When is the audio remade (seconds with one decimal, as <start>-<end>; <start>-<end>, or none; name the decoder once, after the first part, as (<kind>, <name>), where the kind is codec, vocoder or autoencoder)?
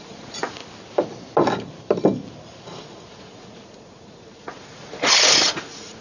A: 0.0-0.6 (vocoder, Vocos); 2.8-6.0